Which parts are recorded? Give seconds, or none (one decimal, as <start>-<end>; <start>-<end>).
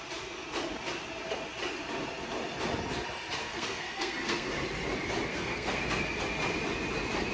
0.0-3.4; 4.5-5.3; 6.0-7.3